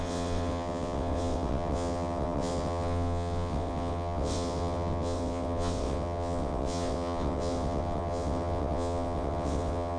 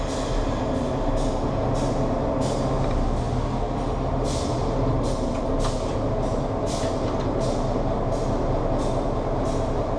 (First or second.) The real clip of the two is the second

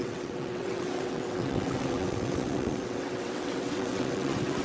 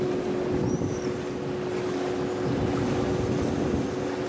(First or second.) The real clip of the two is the second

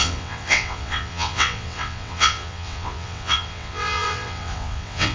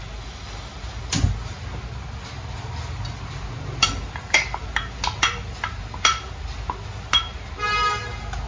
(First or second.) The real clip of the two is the second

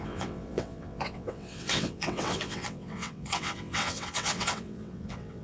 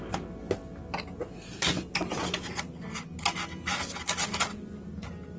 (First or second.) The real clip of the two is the second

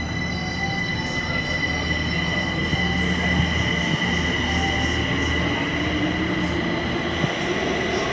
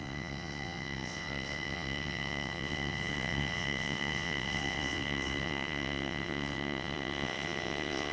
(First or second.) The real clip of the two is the first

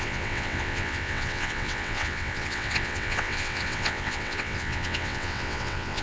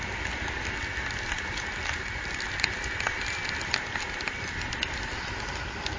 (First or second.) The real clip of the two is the second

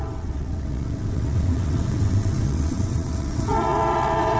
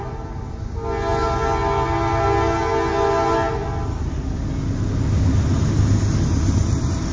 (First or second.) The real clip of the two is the second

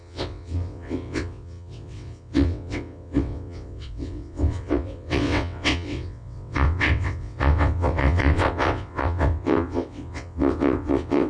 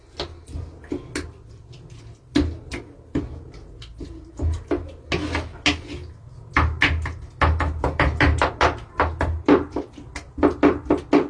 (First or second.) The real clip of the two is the second